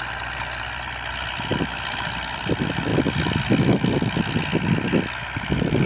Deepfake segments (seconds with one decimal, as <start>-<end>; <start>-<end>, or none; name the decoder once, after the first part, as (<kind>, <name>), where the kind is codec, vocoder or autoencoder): 1.5-2.2 (vocoder, BigVGAN v2)